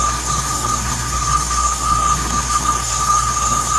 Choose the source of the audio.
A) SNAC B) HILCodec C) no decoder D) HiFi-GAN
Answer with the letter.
A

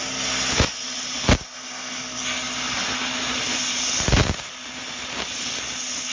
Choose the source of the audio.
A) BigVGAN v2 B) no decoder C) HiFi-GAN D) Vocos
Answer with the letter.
B